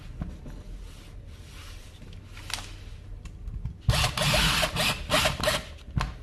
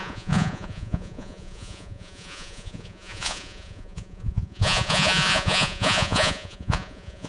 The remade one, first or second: second